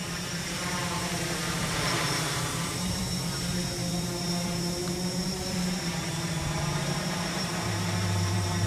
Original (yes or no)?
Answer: no